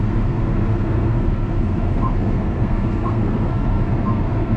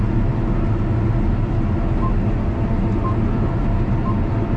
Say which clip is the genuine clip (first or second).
second